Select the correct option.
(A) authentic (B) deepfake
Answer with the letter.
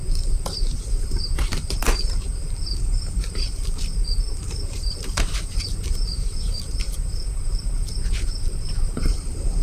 B